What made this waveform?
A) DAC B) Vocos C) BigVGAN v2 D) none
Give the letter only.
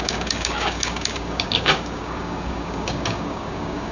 A